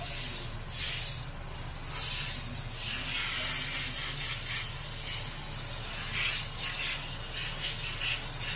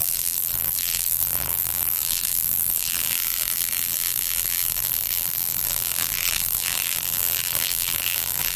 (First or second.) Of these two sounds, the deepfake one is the second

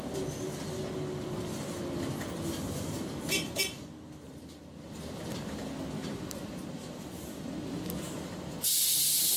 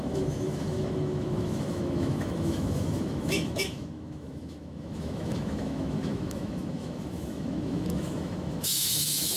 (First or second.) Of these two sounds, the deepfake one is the second